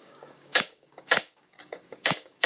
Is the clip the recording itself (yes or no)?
no